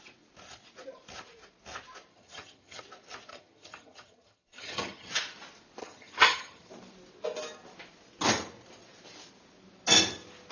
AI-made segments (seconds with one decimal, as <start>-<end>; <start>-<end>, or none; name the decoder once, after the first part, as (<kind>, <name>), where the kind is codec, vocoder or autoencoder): 2.1-2.8 (vocoder, HiFi-GAN); 3.3-5.1; 5.8-6.7